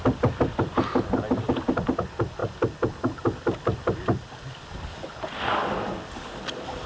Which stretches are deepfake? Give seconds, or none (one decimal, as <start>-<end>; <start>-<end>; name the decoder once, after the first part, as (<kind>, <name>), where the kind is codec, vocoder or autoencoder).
none